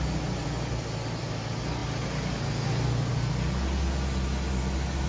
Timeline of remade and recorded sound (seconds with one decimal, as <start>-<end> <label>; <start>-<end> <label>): 0.0-5.1 recorded